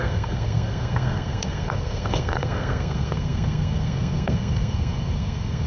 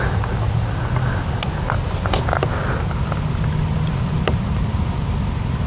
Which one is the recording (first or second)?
second